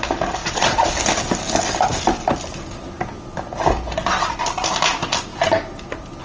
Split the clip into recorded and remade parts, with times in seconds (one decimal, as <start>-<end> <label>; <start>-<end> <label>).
0.0-0.4 recorded; 0.4-0.9 remade; 0.9-6.2 recorded